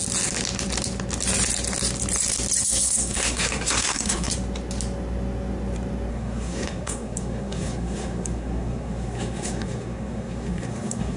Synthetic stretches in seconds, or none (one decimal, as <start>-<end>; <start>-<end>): 2.6-4.3; 6.1-11.2